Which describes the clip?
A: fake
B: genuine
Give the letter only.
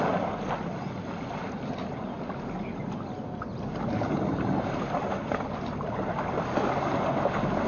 B